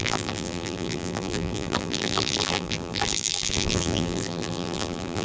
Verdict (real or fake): fake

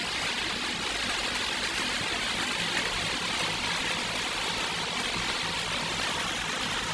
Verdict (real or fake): real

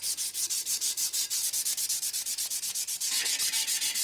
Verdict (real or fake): real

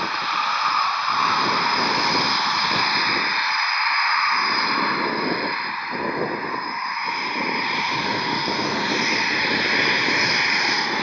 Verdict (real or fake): real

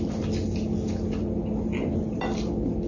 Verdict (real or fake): real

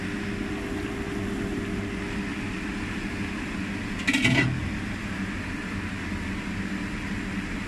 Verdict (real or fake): real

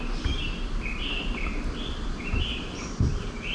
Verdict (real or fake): fake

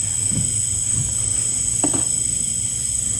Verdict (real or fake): real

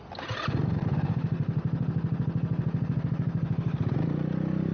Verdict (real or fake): real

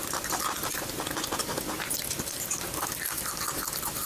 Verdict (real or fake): real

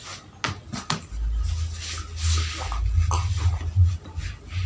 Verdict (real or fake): real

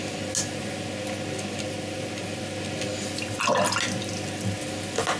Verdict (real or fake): real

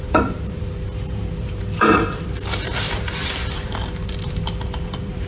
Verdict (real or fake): fake